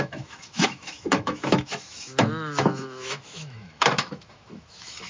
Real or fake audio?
fake